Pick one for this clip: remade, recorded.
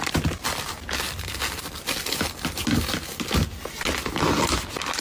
recorded